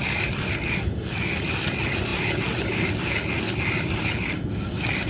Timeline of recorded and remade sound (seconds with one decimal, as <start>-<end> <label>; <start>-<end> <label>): 0.0-5.1 recorded